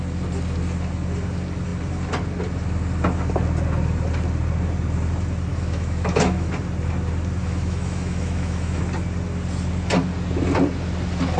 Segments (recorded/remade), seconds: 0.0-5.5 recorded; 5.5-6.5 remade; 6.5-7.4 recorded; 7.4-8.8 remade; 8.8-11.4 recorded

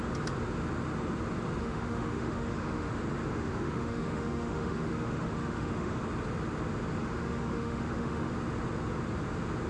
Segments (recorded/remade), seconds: 0.0-1.6 recorded; 1.6-2.9 remade; 2.9-3.3 recorded; 3.3-6.0 remade; 6.0-7.0 recorded; 7.0-8.3 remade; 8.3-9.7 recorded

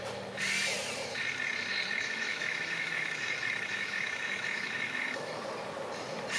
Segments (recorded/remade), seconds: 0.0-1.9 recorded; 1.9-5.4 remade; 5.4-6.4 recorded

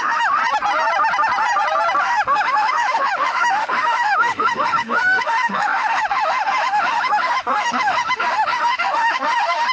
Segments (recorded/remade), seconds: 0.0-0.4 remade; 0.4-2.0 recorded; 2.0-9.7 remade

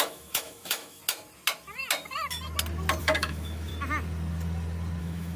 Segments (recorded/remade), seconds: 0.0-1.0 remade; 1.0-3.0 recorded; 3.0-3.7 remade; 3.7-5.0 recorded; 5.0-5.4 remade

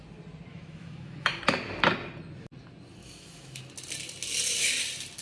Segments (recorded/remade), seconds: 0.0-0.5 recorded; 0.5-1.3 remade; 1.3-3.0 recorded; 3.0-3.6 remade; 3.6-5.2 recorded

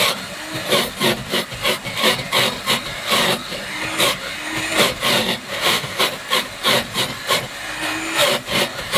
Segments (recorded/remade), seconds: 0.0-5.5 recorded; 5.5-6.0 remade; 6.0-9.0 recorded

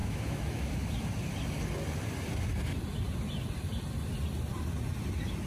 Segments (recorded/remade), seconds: 0.0-0.7 remade; 0.7-5.5 recorded